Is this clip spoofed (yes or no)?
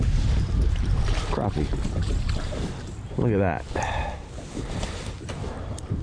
yes